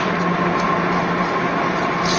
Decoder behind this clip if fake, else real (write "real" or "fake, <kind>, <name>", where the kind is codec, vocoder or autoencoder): real